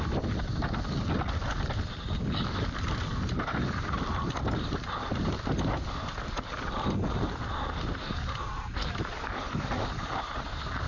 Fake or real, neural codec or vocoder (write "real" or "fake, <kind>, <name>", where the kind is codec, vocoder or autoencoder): real